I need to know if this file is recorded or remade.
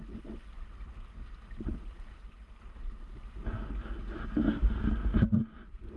recorded